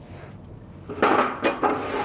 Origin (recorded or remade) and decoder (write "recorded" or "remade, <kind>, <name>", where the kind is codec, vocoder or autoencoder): recorded